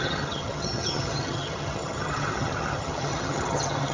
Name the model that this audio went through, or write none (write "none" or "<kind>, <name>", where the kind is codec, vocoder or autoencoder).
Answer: vocoder, HiFi-GAN